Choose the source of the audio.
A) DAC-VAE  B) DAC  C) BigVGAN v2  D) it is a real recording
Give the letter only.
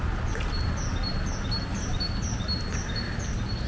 D